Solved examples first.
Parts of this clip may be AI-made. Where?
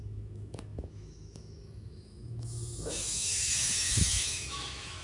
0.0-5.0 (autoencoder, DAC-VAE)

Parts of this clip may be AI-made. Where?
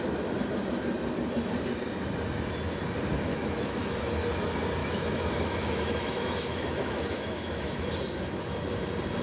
3.3-4.0 (autoencoder, DAC-VAE); 4.8-7.9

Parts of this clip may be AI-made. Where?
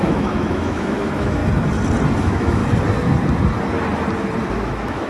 0.0-1.4 (autoencoder, DAC-VAE); 2.2-2.6; 4.5-5.1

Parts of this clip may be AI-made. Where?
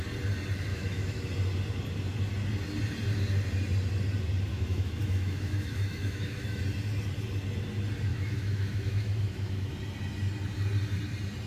0.7-1.2 (autoencoder, DAC-VAE); 4.5-6.6; 8.1-9.7